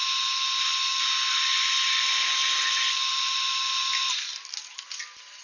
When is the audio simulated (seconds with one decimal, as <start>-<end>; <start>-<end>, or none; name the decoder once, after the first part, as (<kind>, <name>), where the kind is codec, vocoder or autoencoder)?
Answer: none